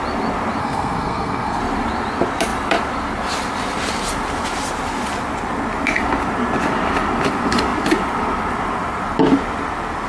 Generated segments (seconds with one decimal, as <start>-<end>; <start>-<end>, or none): 0.6-1.6